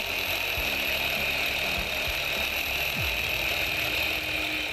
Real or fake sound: real